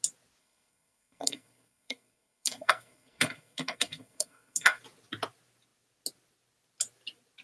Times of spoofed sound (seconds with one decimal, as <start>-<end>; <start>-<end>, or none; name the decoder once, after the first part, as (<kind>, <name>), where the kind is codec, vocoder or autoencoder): 0.4-4.8 (codec, SNAC)